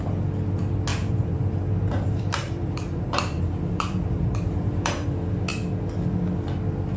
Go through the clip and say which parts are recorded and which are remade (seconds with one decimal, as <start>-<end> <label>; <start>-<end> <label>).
0.0-0.9 recorded; 0.9-5.1 remade; 5.1-7.0 recorded